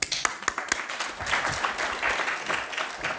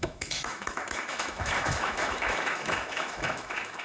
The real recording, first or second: first